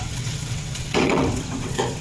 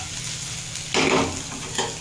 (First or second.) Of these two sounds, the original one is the second